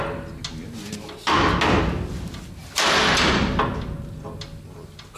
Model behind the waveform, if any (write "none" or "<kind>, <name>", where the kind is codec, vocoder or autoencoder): none